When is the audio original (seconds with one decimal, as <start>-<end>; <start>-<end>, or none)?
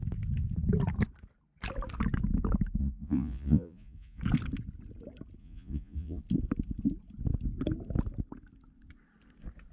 0.0-2.8; 4.2-5.4; 6.2-9.7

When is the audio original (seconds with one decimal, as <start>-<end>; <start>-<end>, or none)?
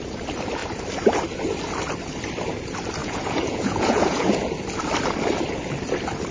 0.0-3.0; 4.5-6.3